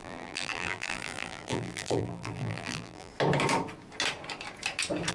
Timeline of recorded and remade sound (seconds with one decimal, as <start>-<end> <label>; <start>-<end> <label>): 0.0-3.1 remade; 3.1-5.1 recorded